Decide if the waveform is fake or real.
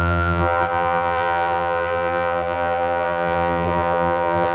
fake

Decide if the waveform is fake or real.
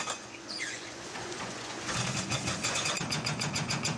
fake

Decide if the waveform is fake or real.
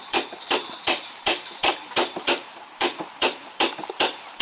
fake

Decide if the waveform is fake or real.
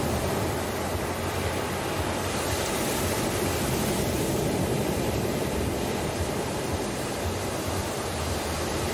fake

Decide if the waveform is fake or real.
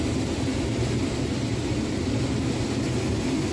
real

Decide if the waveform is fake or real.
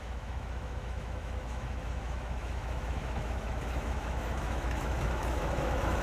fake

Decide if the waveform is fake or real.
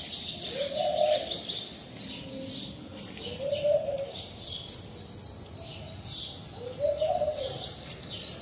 real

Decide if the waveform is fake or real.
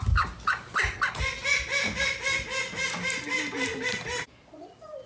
real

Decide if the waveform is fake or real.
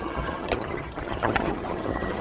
fake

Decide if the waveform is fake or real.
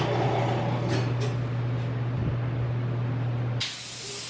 real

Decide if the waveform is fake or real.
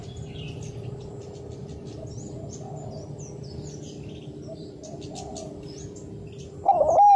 real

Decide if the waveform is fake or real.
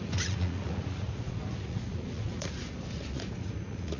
fake